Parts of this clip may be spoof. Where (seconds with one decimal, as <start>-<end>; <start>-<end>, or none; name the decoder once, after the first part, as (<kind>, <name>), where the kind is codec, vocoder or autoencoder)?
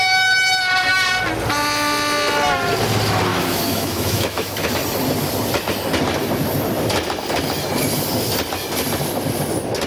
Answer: 3.3-4.7 (autoencoder, DAC-VAE)